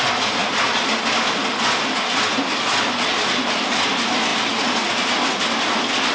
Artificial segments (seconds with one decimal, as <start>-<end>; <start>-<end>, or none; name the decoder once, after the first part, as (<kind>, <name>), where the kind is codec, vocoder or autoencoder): none